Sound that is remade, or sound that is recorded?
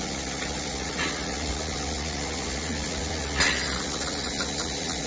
remade